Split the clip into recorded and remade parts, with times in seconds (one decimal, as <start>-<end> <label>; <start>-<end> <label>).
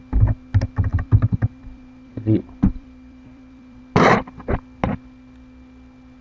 0.0-0.9 recorded; 0.9-3.8 remade; 3.8-6.2 recorded